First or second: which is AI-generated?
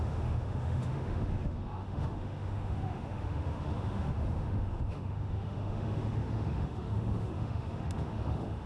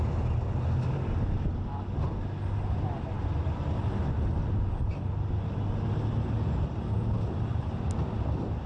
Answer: first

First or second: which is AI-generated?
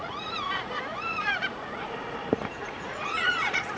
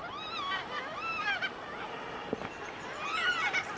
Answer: first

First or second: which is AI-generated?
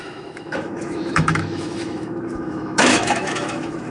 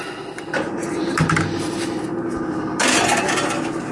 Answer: first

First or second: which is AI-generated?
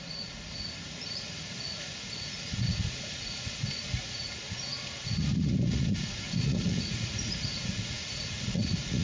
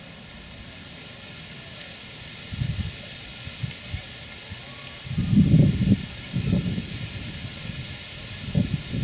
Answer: first